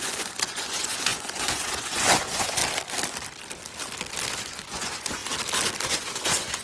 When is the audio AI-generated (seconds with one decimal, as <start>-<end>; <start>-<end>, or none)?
0.0-2.6; 4.4-5.2; 5.9-6.6